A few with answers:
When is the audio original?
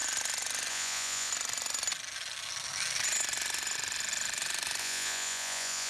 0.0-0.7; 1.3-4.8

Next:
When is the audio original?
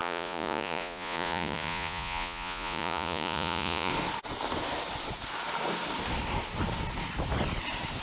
3.9-8.0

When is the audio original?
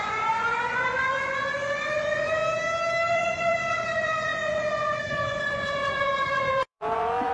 2.4-3.1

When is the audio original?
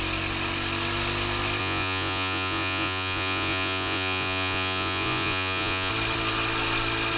0.0-1.6; 5.9-7.2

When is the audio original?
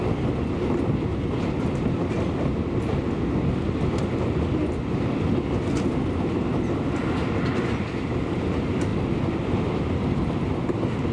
0.0-11.1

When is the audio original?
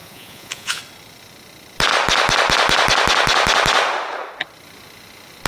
0.8-5.5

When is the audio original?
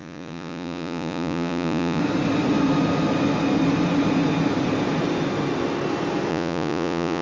2.0-6.3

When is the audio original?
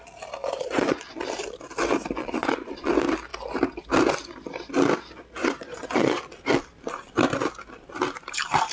0.0-0.4; 1.0-2.2; 2.9-5.4; 6.2-8.7